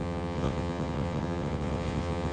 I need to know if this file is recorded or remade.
remade